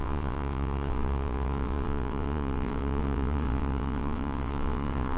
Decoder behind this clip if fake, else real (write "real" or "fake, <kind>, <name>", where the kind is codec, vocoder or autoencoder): fake, vocoder, WaveNeXt